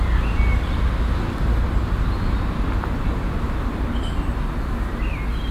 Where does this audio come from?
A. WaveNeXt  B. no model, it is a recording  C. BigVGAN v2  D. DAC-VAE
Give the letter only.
B